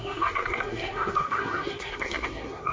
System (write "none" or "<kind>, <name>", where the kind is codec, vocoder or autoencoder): codec, SNAC